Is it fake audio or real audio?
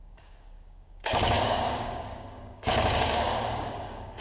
fake